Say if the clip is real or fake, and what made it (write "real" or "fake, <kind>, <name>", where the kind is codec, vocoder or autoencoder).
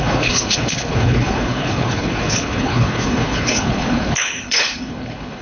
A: fake, codec, HILCodec